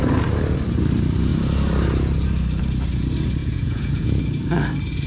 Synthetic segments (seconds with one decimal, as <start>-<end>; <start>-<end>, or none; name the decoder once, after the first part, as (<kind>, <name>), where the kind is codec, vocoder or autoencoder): 3.4-4.2 (vocoder, Vocos)